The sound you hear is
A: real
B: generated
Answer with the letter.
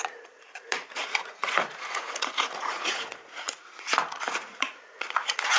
B